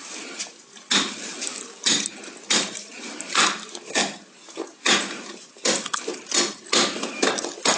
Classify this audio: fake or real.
real